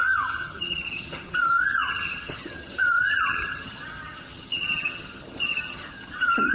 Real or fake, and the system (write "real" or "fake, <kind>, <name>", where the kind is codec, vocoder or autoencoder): fake, vocoder, HiFi-GAN